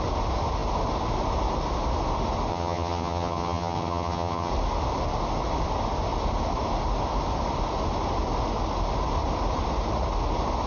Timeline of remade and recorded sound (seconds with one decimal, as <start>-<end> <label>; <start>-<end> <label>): 0.0-2.5 recorded; 2.5-4.5 remade; 4.5-10.7 recorded